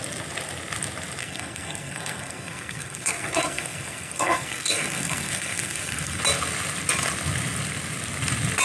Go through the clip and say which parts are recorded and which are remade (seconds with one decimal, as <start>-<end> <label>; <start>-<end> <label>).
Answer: 0.0-1.2 recorded; 1.2-6.2 remade; 6.2-8.6 recorded